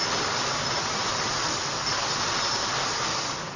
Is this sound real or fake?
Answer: real